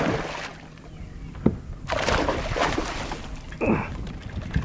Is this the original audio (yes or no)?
yes